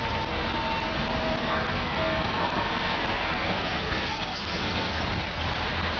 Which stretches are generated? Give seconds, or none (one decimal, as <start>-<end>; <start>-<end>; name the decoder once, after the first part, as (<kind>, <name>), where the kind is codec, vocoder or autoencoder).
1.4-5.0 (codec, SNAC)